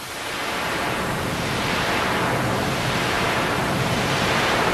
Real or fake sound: fake